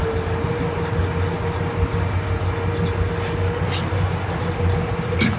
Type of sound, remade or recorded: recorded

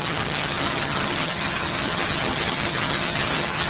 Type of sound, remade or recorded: remade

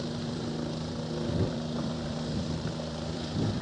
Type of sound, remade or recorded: remade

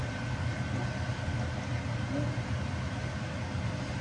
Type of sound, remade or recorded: recorded